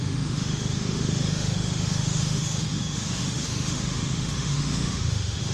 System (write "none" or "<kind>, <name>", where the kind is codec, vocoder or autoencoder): autoencoder, DAC-VAE